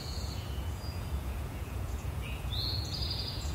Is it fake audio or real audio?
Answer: fake